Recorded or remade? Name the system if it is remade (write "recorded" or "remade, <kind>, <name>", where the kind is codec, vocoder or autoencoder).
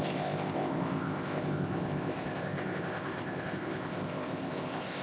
remade, codec, ZipCodec